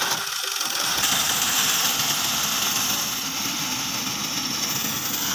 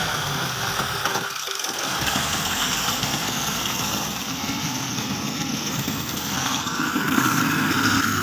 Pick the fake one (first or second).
second